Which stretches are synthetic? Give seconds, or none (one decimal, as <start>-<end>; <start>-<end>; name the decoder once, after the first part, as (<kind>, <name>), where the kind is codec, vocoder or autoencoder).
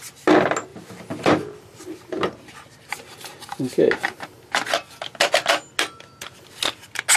0.7-4.3 (vocoder, BigVGAN v2)